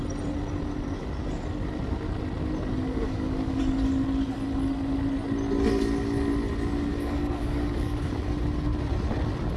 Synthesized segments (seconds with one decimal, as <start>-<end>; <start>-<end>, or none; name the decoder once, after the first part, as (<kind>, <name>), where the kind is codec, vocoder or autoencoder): 2.8-3.6 (codec, DAC); 6.9-8.1